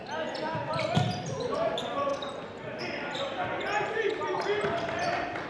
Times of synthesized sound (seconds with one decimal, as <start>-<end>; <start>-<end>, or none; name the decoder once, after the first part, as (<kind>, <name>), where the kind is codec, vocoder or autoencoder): 0.0-2.1 (vocoder, BigVGAN v2); 2.8-5.5